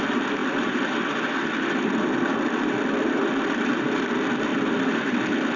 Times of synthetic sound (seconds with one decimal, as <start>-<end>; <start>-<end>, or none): 0.4-3.8; 4.5-5.6